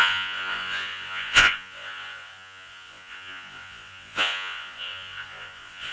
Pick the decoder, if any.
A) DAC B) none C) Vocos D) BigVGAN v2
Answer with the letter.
C